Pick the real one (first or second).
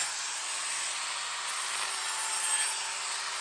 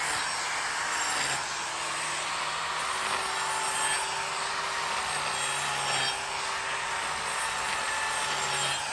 second